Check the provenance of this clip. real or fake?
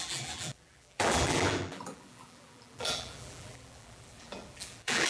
fake